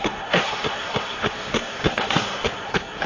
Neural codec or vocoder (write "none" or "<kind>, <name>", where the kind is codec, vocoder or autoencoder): codec, SNAC